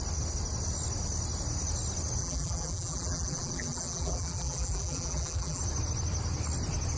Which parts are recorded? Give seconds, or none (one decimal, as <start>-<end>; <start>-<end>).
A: 0.0-2.2; 5.6-7.0